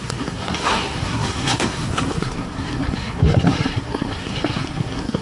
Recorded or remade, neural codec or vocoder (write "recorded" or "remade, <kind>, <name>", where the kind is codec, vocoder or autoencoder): remade, codec, SNAC